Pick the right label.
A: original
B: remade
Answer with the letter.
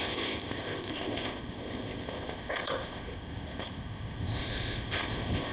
B